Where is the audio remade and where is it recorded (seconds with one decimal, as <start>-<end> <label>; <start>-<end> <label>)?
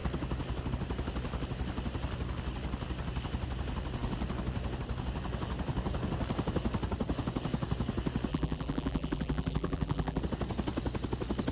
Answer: 0.0-8.3 recorded; 8.3-10.2 remade; 10.2-11.5 recorded